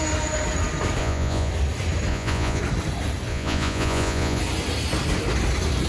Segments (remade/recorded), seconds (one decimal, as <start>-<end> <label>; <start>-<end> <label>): 0.0-1.0 recorded; 1.0-1.5 remade; 1.5-2.1 recorded; 2.1-2.6 remade; 2.6-3.3 recorded; 3.3-4.4 remade; 4.4-5.9 recorded